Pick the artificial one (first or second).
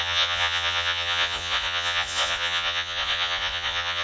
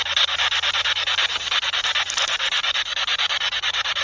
first